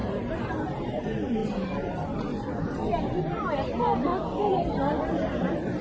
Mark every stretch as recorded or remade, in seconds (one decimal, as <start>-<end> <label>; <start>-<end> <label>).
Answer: 0.0-4.1 remade; 4.1-5.1 recorded; 5.1-5.8 remade